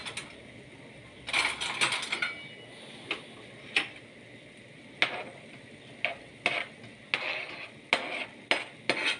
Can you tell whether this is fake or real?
real